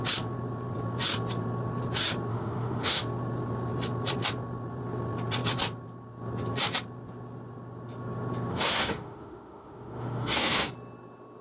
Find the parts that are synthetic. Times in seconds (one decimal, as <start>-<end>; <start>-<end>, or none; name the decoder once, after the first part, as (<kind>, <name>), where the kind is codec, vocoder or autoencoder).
2.3-3.0 (autoencoder, DAC-VAE); 8.5-10.7